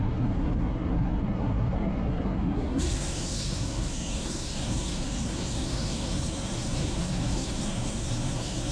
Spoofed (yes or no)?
yes